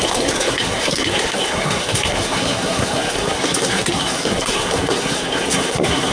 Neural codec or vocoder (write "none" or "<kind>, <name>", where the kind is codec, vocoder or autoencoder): codec, SNAC